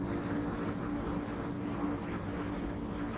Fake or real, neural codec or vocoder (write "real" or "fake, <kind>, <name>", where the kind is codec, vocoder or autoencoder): real